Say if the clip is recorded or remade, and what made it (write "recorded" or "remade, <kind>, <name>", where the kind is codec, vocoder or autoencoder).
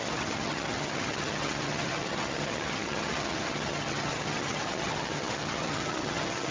remade, vocoder, HiFi-GAN